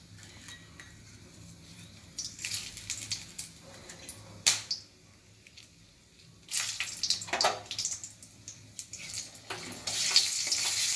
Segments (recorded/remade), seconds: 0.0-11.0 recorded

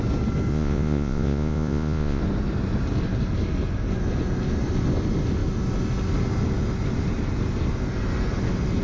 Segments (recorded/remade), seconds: 0.0-0.5 recorded; 0.5-2.2 remade; 2.2-8.8 recorded

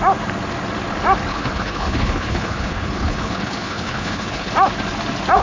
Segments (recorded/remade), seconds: 0.0-1.3 recorded; 1.3-4.5 remade; 4.5-5.4 recorded

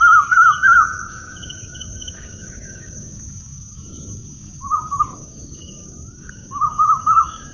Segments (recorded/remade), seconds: 0.0-7.5 remade